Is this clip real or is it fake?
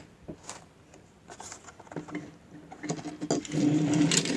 real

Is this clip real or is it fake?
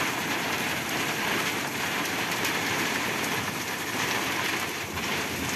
fake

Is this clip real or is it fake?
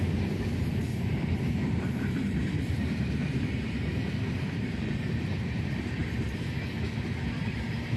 fake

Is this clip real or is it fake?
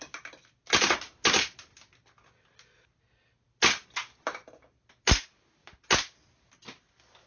real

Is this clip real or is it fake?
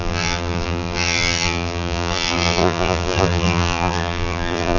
fake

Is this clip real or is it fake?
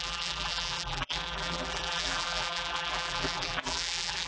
fake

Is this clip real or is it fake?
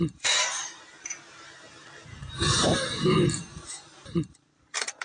fake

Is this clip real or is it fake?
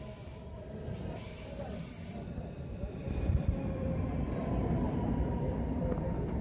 fake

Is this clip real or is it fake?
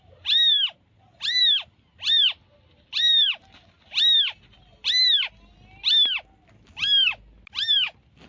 real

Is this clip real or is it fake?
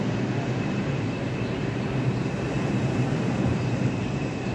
fake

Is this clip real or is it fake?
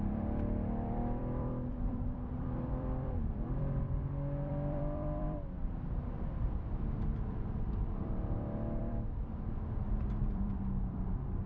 fake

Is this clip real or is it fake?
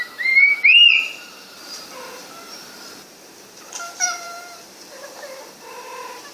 fake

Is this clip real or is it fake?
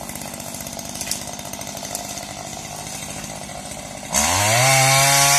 real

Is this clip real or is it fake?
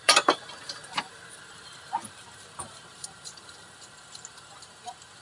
fake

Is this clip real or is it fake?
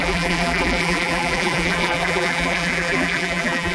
fake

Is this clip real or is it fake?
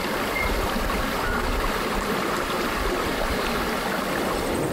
fake